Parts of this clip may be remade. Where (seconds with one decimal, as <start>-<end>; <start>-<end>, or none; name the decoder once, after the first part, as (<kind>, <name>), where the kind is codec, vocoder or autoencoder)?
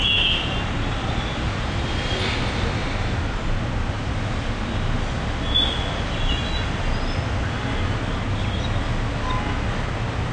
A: none